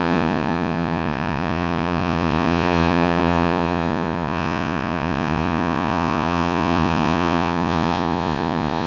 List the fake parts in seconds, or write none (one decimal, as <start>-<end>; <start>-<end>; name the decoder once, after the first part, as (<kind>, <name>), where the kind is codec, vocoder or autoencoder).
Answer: 0.0-8.9 (vocoder, Vocos)